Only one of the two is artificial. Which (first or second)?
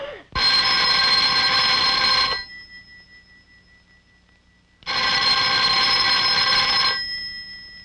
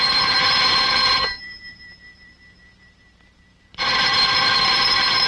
second